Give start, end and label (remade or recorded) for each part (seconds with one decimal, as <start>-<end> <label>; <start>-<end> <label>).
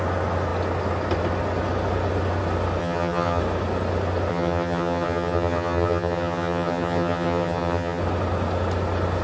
0.0-2.8 recorded; 2.8-3.4 remade; 3.4-4.3 recorded; 4.3-8.0 remade; 8.0-9.2 recorded